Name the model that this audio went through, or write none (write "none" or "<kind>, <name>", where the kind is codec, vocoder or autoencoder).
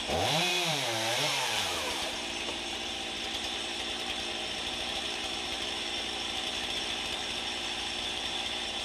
vocoder, BigVGAN v2